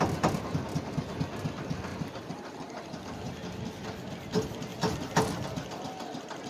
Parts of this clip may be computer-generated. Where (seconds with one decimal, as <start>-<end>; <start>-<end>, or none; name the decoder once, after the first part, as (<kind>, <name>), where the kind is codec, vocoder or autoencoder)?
1.9-3.0 (vocoder, BigVGAN v2); 4.7-6.5